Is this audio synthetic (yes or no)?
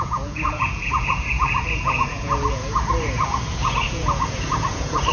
yes